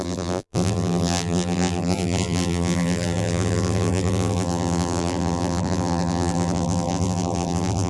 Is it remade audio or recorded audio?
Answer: remade